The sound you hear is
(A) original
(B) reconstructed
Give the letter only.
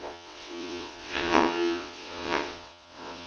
B